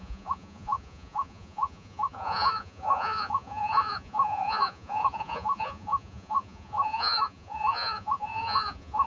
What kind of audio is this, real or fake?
fake